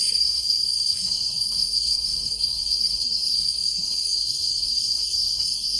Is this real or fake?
fake